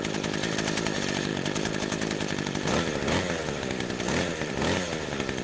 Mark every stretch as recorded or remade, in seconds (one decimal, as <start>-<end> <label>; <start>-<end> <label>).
0.0-5.4 recorded